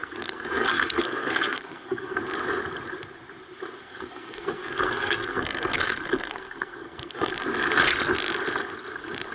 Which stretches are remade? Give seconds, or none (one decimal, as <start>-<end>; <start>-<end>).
0.0-2.2; 3.8-7.3